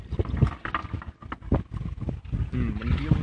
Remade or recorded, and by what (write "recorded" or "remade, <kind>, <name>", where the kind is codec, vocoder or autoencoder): recorded